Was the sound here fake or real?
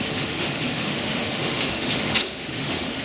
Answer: fake